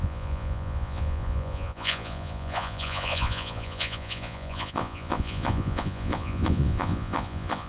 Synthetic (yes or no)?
yes